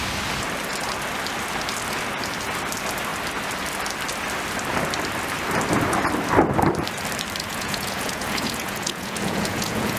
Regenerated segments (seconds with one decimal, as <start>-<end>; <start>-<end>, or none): 7.5-10.0